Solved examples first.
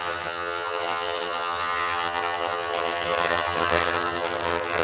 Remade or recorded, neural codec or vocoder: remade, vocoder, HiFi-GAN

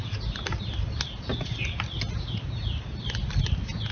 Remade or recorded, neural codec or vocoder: recorded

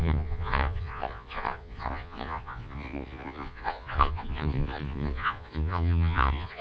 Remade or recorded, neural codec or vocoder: remade, vocoder, Vocos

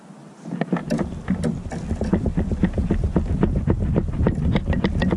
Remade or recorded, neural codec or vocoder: recorded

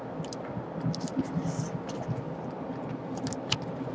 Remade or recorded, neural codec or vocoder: recorded